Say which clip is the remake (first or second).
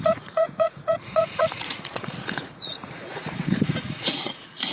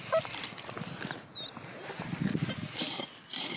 first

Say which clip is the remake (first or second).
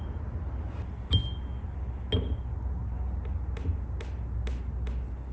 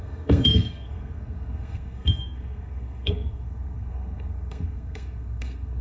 second